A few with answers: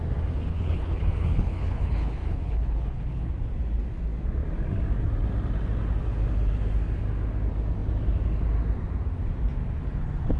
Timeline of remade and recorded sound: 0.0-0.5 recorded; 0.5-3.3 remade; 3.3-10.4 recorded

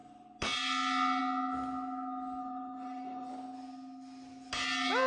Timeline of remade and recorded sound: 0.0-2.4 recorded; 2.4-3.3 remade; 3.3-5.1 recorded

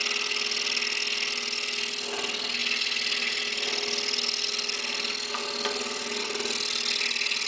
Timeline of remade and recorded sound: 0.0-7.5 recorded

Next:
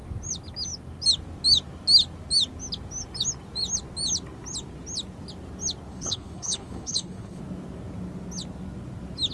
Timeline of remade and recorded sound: 0.0-5.9 recorded; 5.9-7.4 remade; 7.4-9.3 recorded

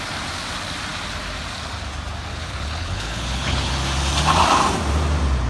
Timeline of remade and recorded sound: 0.0-2.3 recorded; 2.3-3.7 remade; 3.7-5.5 recorded